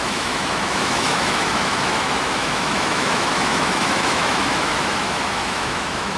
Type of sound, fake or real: fake